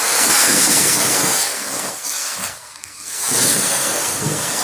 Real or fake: fake